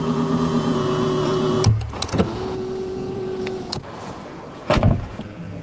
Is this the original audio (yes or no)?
no